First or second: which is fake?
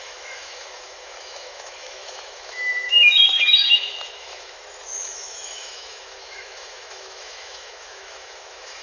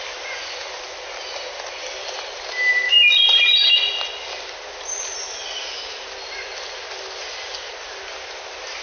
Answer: first